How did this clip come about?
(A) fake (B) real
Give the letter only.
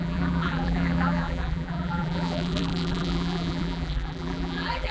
A